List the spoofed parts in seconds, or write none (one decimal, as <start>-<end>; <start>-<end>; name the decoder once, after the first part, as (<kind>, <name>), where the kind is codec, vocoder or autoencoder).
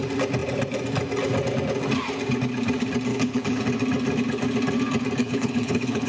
3.1-3.6 (codec, HILCodec); 5.2-6.1